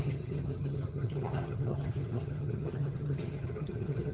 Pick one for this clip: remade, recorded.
remade